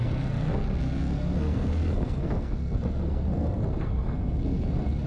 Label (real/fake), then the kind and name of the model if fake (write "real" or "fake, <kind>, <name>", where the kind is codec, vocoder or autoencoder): fake, codec, SNAC